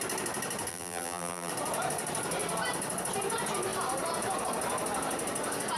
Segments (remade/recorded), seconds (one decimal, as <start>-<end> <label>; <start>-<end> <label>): 0.0-0.7 recorded; 0.7-1.5 remade; 1.5-5.8 recorded